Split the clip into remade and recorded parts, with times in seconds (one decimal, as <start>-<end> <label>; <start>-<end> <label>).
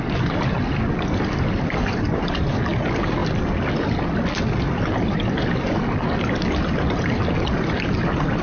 0.0-8.4 recorded